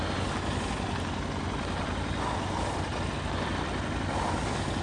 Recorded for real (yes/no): yes